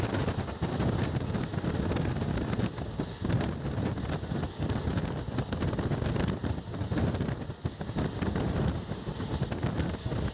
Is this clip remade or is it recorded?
recorded